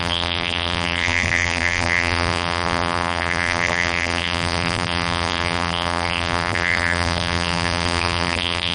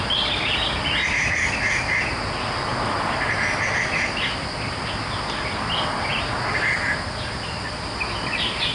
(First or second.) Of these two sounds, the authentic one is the second